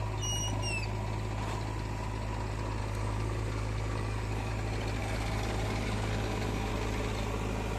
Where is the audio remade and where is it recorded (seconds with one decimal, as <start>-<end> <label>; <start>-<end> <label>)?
0.0-2.8 recorded; 2.8-4.5 remade; 4.5-5.0 recorded; 5.0-6.7 remade; 6.7-7.8 recorded